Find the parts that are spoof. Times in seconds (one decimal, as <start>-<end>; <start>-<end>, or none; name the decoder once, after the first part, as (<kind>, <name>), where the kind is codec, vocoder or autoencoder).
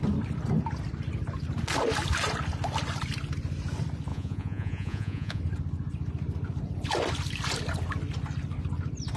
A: 4.1-5.4 (vocoder, Vocos)